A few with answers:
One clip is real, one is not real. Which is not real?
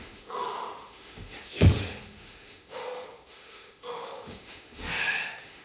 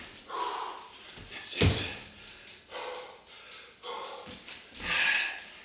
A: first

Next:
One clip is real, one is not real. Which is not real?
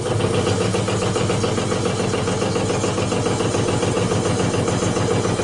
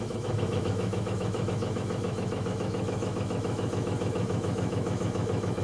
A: second